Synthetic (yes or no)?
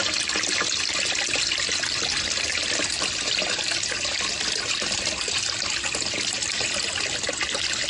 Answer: no